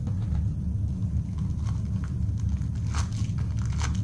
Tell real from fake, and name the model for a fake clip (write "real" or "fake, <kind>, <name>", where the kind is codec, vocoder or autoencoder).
real